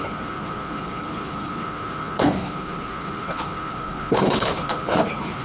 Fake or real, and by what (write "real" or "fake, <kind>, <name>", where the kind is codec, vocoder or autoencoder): fake, codec, HILCodec